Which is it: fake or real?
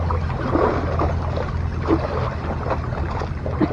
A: real